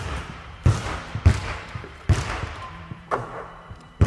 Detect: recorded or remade remade